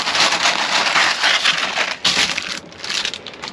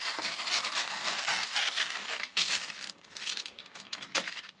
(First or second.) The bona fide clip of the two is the first